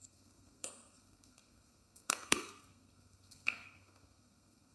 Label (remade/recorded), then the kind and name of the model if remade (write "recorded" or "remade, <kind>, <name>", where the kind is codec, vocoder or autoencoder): remade, codec, SNAC